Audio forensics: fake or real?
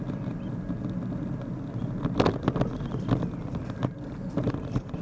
real